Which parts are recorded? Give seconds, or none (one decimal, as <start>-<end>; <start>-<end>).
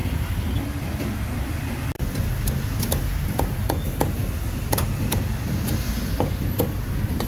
0.0-7.3